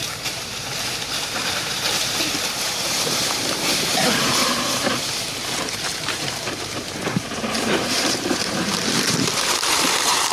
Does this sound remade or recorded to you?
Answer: remade